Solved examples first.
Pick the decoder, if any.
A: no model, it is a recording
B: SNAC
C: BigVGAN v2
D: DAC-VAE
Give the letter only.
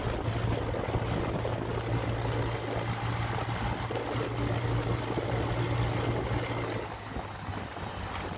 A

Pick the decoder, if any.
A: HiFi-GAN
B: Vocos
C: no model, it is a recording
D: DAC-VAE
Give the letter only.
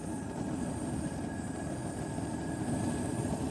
C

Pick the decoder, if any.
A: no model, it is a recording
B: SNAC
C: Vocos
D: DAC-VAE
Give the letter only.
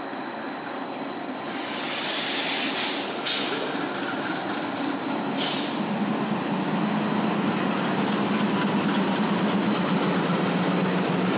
A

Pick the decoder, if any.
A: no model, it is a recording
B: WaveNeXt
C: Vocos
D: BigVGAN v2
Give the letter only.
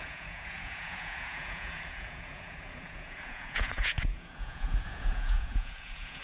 C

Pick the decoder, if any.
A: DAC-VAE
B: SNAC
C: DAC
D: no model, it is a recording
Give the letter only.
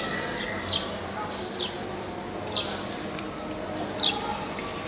D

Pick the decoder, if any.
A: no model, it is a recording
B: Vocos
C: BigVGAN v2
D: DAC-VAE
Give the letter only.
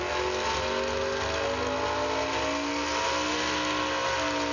A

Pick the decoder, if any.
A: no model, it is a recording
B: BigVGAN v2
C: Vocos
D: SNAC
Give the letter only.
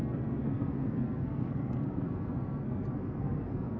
D